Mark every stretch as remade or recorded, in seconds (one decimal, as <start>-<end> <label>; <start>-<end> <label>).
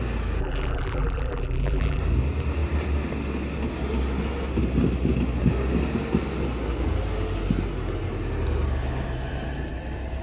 0.0-0.4 recorded; 0.4-2.0 remade; 2.0-10.2 recorded